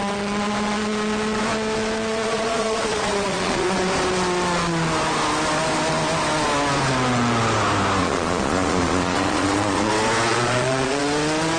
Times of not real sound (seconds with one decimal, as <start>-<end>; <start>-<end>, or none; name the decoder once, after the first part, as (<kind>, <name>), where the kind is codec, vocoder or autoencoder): 2.1-3.8 (vocoder, Vocos); 8.0-9.9; 10.3-11.0